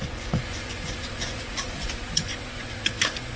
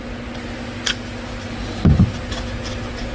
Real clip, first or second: second